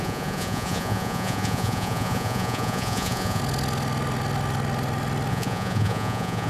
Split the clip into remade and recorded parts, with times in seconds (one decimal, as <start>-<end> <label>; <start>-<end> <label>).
0.0-3.4 remade; 3.4-5.3 recorded; 5.3-6.5 remade